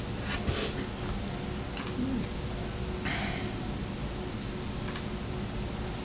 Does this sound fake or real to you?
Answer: real